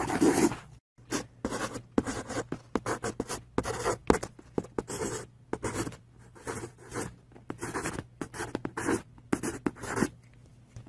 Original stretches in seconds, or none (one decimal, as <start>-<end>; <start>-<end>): 0.0-10.9